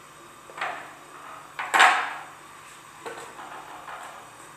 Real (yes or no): yes